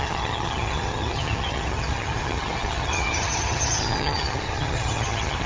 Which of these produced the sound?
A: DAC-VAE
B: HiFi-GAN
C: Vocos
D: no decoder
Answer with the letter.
B